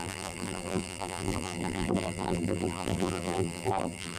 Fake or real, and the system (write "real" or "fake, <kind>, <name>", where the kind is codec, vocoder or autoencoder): fake, vocoder, BigVGAN v2